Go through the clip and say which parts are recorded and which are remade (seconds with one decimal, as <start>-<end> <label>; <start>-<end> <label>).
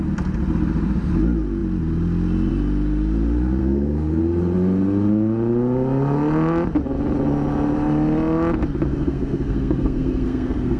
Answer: 0.0-3.6 recorded; 3.6-4.2 remade; 4.2-8.9 recorded; 8.9-10.8 remade